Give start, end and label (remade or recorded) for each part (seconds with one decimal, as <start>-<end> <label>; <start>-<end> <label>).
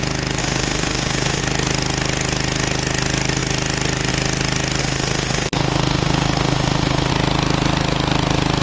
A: 0.0-0.4 recorded; 0.4-1.4 remade; 1.4-4.8 recorded; 4.8-7.1 remade; 7.1-8.6 recorded